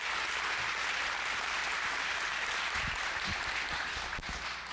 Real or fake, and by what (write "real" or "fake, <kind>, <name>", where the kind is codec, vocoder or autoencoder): real